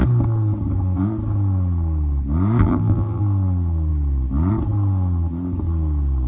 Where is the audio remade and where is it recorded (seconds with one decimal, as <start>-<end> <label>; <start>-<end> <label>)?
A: 0.0-2.6 recorded; 2.6-3.2 remade; 3.2-6.3 recorded